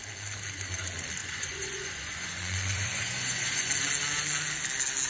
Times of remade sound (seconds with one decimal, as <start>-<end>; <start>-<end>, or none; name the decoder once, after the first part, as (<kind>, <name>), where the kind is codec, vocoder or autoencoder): 1.2-3.7 (vocoder, Vocos)